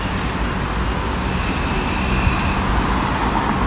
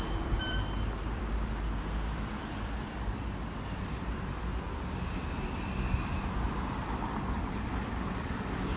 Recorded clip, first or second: first